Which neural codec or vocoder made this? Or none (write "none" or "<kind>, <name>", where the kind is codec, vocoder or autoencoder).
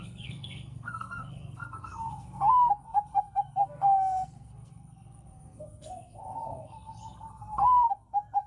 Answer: codec, SNAC